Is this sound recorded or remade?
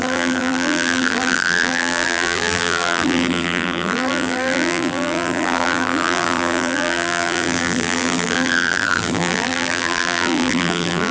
remade